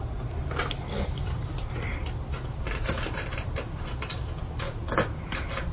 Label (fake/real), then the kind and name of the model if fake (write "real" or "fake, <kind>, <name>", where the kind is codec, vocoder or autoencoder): fake, vocoder, BigVGAN v2